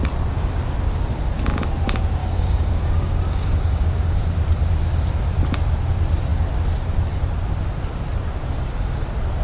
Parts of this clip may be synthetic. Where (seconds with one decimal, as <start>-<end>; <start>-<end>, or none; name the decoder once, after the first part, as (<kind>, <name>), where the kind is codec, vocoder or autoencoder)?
2.2-4.2 (codec, DAC)